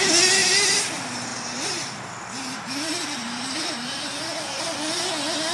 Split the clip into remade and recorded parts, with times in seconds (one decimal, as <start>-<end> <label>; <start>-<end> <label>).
0.0-1.3 recorded; 1.3-4.6 remade; 4.6-5.5 recorded